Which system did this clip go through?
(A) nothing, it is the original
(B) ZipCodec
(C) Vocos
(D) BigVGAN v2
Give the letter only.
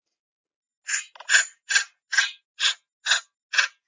A